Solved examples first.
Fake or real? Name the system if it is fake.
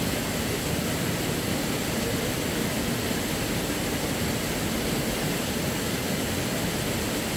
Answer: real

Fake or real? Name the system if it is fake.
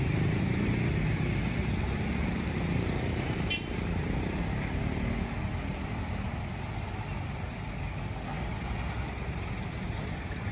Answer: real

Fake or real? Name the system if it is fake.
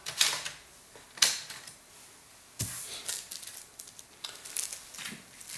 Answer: real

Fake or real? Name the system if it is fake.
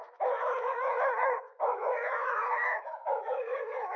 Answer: fake, autoencoder, DAC-VAE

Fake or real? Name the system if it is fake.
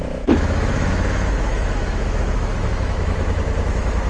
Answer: fake, autoencoder, DAC-VAE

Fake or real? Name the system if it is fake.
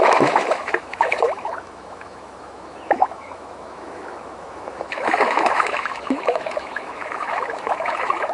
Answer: fake, autoencoder, DAC-VAE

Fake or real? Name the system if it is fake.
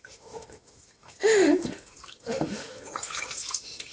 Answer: fake, autoencoder, DAC-VAE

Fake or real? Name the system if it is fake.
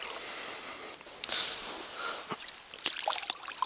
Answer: real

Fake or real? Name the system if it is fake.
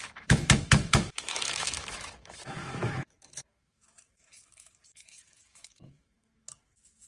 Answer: fake, autoencoder, DAC-VAE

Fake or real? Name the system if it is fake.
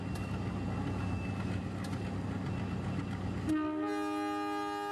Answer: real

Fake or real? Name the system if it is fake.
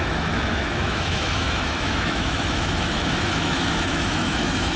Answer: fake, autoencoder, DAC-VAE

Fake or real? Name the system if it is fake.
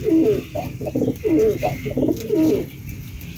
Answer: real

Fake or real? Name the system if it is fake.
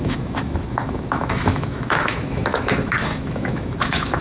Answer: fake, autoencoder, DAC-VAE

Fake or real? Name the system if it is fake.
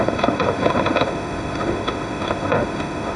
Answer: fake, autoencoder, DAC-VAE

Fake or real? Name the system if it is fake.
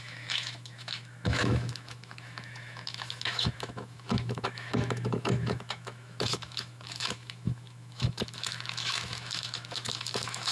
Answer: fake, autoencoder, DAC-VAE